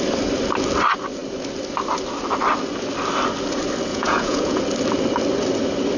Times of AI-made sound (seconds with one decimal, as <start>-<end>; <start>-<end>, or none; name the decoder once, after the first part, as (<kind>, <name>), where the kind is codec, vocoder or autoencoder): 3.9-4.6 (vocoder, Vocos)